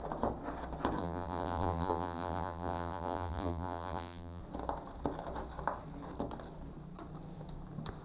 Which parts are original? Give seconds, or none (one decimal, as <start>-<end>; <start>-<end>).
0.0-1.0; 4.4-8.0